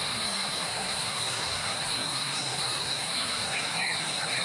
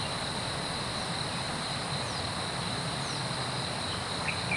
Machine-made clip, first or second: first